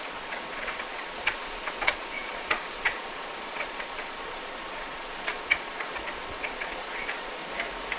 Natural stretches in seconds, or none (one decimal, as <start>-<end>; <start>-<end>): 7.4-8.0